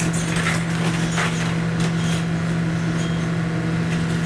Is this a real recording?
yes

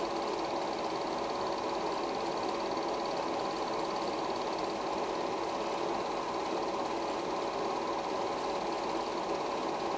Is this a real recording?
yes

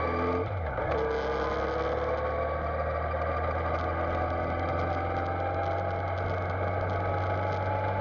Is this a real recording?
yes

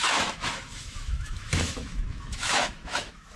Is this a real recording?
no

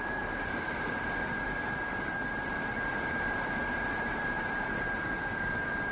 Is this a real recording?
yes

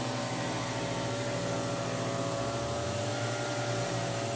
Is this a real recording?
yes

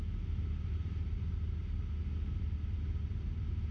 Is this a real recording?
yes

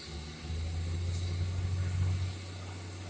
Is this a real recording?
yes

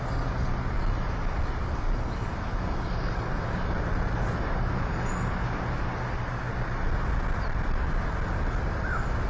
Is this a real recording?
yes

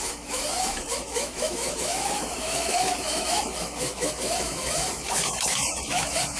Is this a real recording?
no